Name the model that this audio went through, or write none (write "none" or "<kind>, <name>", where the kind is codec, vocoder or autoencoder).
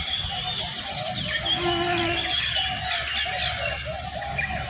none